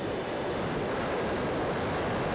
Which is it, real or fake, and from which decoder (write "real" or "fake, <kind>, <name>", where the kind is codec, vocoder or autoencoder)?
real